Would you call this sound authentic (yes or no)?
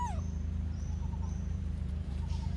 no